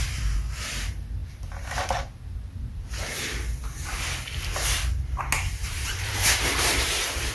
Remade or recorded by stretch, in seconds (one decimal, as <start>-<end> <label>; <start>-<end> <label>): 0.0-1.2 remade; 1.2-5.5 recorded; 5.5-7.3 remade